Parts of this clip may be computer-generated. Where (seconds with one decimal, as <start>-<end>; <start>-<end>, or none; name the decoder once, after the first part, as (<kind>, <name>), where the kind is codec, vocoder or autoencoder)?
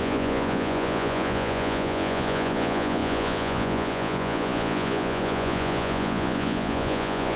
0.0-7.4 (vocoder, Vocos)